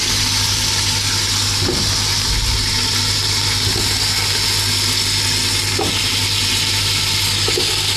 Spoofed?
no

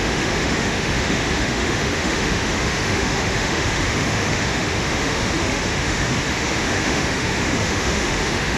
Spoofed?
yes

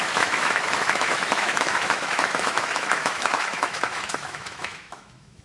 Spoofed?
yes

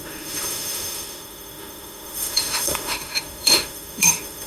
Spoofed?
yes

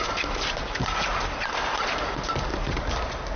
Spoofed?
no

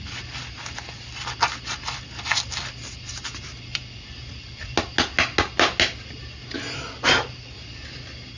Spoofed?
no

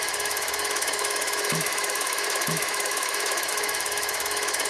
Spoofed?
yes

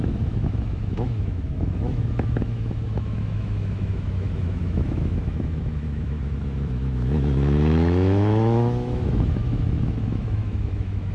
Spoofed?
yes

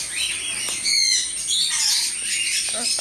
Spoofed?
no